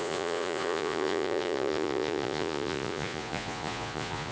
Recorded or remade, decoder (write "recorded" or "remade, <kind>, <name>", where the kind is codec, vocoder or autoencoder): remade, vocoder, Vocos